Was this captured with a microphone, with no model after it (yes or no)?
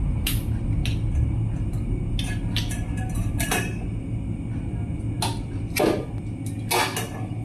yes